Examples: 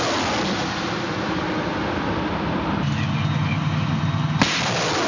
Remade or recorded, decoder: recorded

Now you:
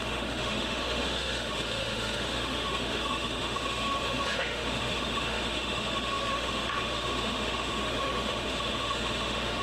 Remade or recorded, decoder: remade, autoencoder, DAC-VAE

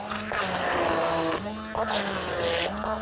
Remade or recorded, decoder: recorded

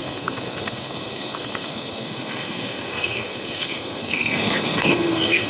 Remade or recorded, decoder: remade, codec, SNAC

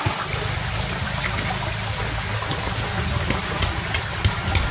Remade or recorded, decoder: recorded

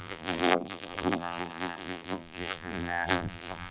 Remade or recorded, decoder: remade, vocoder, BigVGAN v2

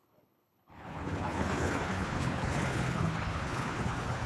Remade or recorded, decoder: remade, codec, HILCodec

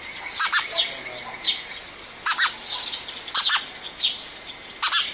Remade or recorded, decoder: remade, vocoder, BigVGAN v2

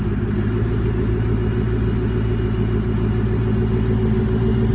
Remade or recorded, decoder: recorded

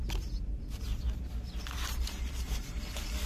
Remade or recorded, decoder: recorded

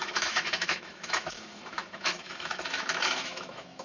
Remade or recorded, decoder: remade, autoencoder, DAC-VAE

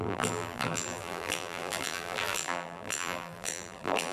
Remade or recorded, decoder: remade, vocoder, BigVGAN v2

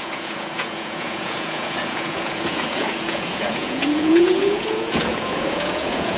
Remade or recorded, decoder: remade, vocoder, Vocos